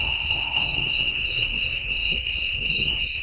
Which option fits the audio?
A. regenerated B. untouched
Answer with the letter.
A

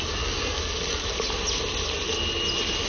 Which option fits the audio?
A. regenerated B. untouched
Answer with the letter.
B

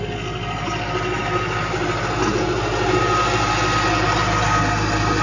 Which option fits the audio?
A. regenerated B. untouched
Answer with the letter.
B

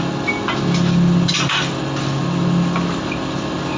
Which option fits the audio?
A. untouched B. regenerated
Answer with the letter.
A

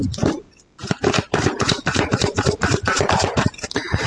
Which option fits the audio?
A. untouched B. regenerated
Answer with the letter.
B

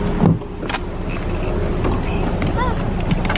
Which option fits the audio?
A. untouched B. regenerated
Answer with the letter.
A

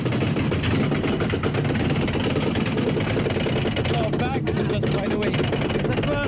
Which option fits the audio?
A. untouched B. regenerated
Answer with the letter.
A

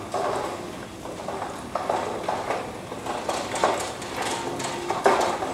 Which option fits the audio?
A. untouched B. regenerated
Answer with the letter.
A